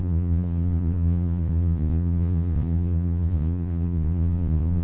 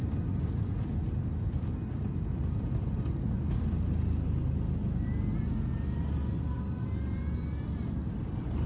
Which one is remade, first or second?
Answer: first